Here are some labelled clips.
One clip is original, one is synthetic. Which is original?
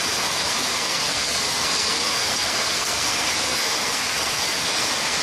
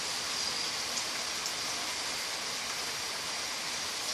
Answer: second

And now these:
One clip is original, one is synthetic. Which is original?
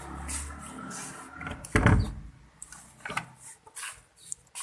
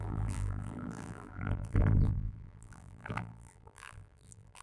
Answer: first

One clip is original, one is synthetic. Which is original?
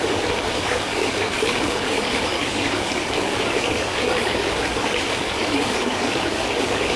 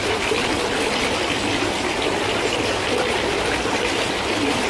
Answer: second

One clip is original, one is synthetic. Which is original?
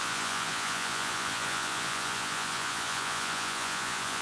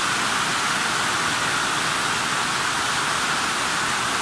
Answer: second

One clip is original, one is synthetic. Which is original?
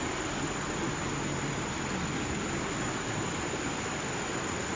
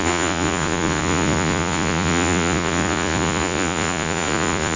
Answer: first